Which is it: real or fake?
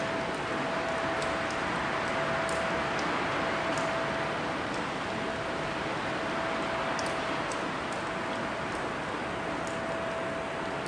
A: real